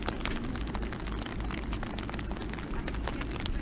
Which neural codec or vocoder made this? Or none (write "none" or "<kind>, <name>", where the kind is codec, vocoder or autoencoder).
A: none